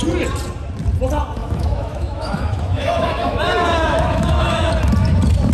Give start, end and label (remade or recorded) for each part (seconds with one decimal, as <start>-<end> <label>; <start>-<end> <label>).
0.0-1.4 recorded; 1.4-4.7 remade; 4.7-5.5 recorded